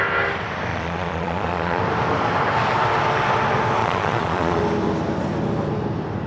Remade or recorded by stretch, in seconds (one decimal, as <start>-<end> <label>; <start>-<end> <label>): 0.0-0.7 recorded; 0.7-1.8 remade; 1.8-3.8 recorded; 3.8-4.6 remade; 4.6-6.3 recorded